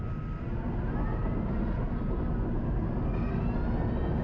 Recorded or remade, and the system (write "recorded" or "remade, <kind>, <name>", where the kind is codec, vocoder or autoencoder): recorded